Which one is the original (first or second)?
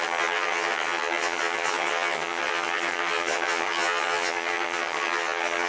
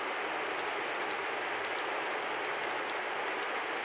second